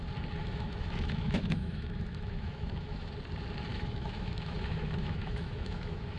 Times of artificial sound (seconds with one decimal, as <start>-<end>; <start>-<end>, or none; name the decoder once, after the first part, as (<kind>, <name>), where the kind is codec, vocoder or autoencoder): 0.4-3.1 (autoencoder, DAC-VAE); 3.7-6.2